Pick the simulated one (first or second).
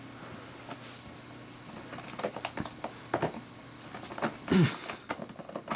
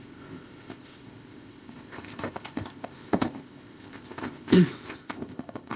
second